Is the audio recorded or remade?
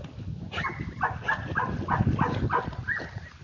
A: recorded